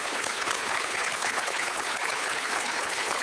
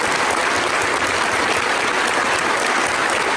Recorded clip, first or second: second